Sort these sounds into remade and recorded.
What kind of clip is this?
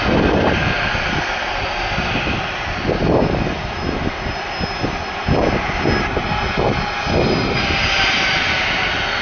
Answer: recorded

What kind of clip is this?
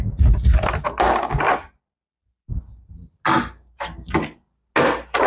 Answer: recorded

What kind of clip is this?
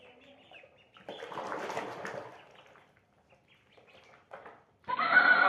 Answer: recorded